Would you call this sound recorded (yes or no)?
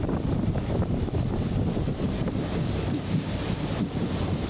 no